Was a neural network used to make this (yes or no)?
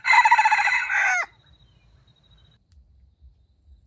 no